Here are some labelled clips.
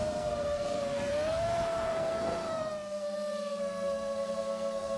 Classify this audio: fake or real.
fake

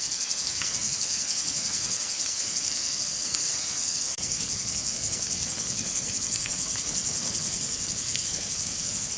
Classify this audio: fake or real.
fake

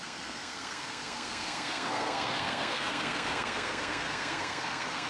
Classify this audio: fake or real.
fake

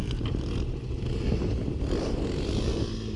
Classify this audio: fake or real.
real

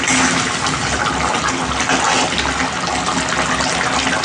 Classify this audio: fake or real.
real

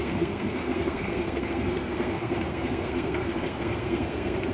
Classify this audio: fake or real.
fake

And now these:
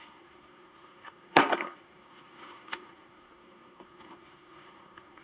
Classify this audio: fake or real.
fake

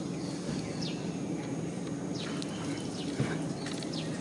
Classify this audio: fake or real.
real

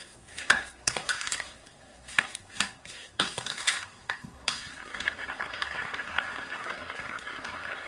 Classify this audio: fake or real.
fake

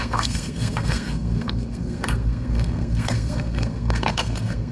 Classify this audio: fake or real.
fake